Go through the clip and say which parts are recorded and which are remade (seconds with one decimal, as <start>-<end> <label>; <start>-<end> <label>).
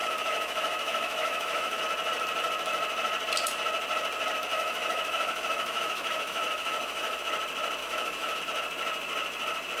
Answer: 0.0-1.8 remade; 1.8-4.5 recorded; 4.5-7.2 remade; 7.2-7.8 recorded; 7.8-8.4 remade; 8.4-9.8 recorded